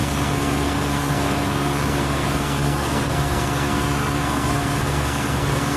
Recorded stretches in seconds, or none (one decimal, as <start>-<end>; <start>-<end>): none